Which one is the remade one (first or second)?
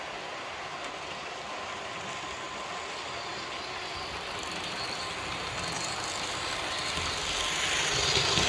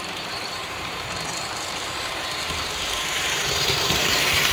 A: second